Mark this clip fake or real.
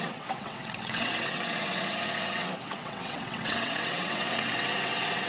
fake